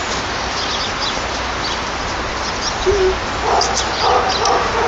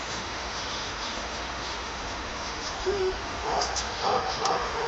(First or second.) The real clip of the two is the first